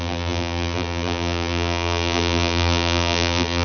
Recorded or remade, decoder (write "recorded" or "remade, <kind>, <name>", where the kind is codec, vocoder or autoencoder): remade, vocoder, BigVGAN v2